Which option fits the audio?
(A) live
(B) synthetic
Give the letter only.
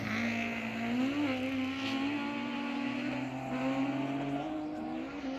A